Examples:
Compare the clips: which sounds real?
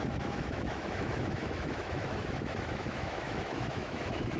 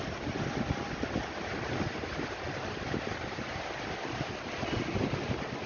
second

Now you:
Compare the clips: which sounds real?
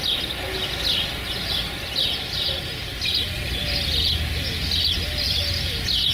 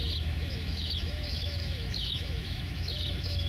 first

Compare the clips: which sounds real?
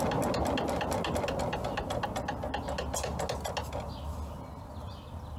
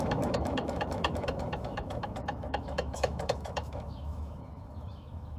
first